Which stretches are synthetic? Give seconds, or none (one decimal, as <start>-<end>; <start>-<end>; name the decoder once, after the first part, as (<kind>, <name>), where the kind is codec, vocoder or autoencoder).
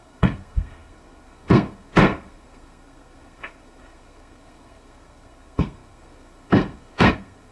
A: 0.0-7.5 (codec, SNAC)